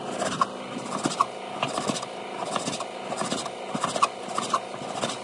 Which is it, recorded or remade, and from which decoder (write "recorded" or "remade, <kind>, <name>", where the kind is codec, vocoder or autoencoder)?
recorded